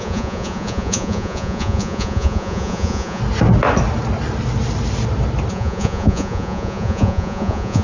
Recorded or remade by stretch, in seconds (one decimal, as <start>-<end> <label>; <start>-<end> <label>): 0.0-3.2 remade; 3.2-5.5 recorded; 5.5-7.8 remade